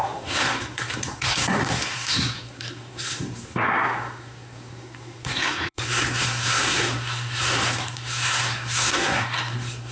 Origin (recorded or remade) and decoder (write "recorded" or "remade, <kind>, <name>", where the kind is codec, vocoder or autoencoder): remade, codec, SNAC